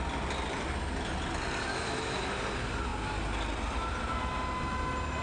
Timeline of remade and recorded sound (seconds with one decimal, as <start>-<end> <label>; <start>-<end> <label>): 0.0-1.7 recorded; 1.7-2.4 remade; 2.4-5.2 recorded